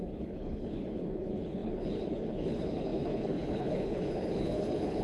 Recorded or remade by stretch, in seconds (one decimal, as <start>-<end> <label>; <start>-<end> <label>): 0.0-5.0 remade